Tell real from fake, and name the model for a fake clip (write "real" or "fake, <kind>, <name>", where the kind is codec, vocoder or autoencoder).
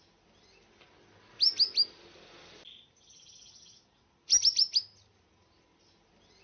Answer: real